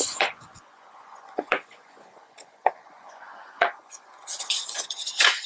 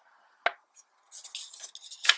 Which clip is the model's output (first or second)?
first